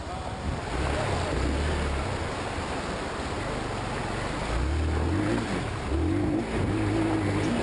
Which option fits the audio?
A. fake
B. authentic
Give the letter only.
B